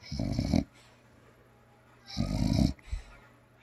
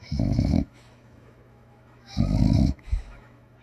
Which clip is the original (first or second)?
first